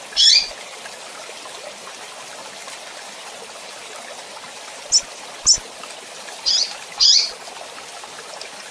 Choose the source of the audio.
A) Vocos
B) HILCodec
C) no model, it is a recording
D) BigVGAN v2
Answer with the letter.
C